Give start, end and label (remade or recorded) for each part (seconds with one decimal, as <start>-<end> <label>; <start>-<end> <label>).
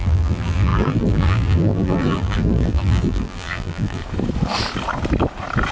0.0-4.0 remade; 4.0-5.7 recorded